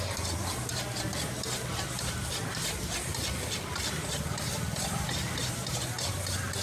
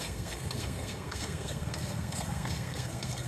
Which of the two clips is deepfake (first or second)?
second